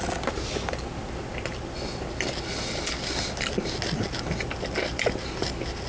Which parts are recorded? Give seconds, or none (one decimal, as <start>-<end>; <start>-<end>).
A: 0.0-5.9